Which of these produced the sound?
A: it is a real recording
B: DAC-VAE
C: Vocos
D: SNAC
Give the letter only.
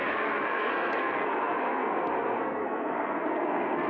D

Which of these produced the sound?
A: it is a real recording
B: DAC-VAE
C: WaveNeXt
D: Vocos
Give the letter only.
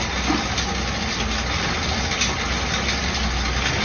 A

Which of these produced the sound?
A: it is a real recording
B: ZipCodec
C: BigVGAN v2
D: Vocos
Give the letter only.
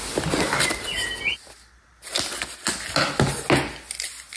A